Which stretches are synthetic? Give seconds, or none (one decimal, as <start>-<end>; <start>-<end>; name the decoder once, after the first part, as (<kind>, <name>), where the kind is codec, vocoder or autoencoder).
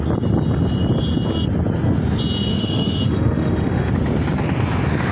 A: 2.5-3.9 (autoencoder, DAC-VAE)